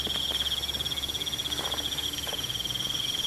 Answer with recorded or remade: recorded